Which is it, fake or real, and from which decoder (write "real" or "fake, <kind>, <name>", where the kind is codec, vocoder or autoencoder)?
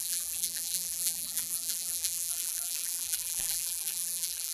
fake, vocoder, BigVGAN v2